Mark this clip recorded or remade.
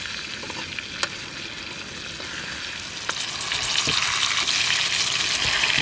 recorded